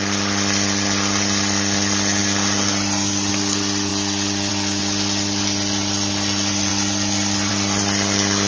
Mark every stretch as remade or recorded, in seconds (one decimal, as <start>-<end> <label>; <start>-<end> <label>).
0.0-8.5 recorded